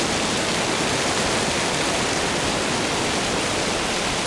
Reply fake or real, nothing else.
real